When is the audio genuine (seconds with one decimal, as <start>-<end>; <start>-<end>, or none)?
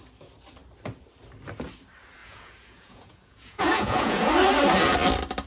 0.0-2.2; 4.3-5.5